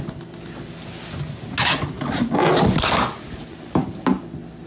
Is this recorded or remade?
recorded